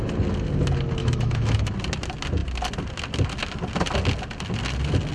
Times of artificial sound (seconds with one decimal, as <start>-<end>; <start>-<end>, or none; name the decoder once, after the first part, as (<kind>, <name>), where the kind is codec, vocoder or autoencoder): 1.0-1.7 (autoencoder, DAC-VAE)